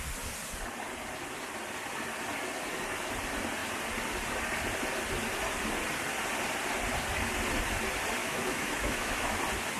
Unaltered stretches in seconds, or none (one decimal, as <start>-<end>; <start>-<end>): 0.0-8.2; 9.4-9.8